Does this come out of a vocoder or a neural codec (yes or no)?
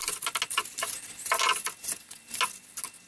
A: no